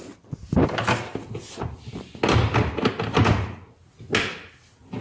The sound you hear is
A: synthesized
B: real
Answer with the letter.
B